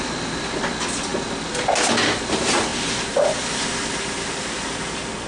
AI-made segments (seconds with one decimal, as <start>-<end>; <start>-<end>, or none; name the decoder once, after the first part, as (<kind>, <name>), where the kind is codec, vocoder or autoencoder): none